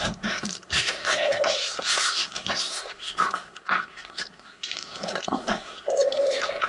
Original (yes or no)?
no